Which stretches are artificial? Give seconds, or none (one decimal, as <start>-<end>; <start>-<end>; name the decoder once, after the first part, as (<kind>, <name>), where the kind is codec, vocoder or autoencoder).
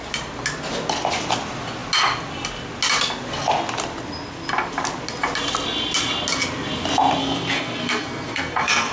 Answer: 7.2-8.9 (codec, SNAC)